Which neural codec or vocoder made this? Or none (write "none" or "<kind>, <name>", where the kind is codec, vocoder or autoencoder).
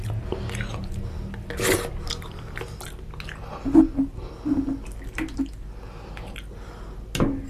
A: none